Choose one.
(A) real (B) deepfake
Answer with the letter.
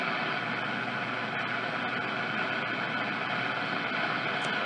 A